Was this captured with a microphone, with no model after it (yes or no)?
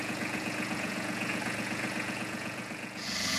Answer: no